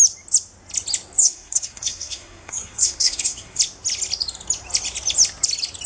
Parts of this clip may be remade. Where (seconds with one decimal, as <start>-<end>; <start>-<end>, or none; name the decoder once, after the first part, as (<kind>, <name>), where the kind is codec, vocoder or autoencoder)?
1.2-3.6 (codec, SNAC)